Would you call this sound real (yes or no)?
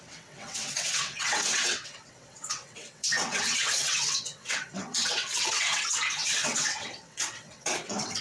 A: no